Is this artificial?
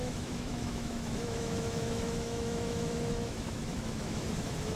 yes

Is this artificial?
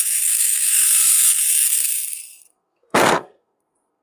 yes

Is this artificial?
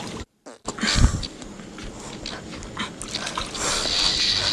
no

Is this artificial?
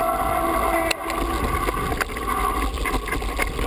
no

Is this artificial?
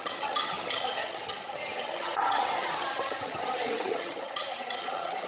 yes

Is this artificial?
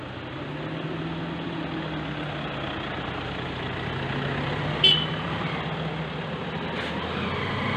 no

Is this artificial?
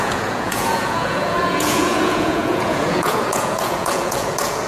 yes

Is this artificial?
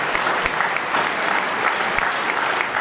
yes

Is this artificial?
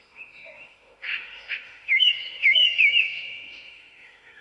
yes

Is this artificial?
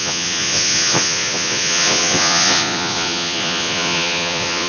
yes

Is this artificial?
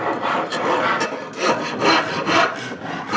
yes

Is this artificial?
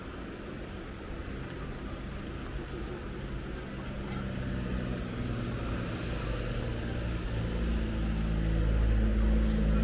no